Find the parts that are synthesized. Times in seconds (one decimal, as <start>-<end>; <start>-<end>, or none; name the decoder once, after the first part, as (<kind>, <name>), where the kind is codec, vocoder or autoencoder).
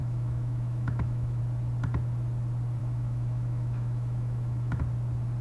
0.0-1.4 (autoencoder, DAC-VAE); 2.8-4.8